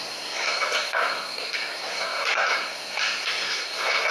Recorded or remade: remade